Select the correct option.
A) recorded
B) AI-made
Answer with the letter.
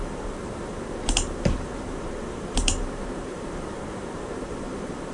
B